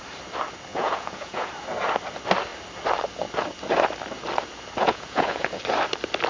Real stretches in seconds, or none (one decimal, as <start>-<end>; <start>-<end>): 0.0-0.7; 1.5-4.8; 5.6-6.3